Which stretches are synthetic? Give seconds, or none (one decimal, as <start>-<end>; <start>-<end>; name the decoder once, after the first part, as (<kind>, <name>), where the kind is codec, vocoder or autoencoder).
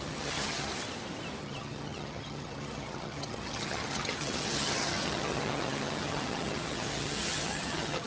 0.0-0.7 (vocoder, HiFi-GAN); 1.4-8.1